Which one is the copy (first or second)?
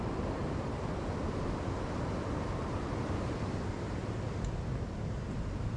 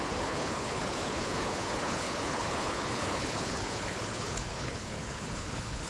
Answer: second